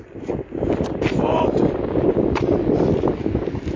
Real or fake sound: real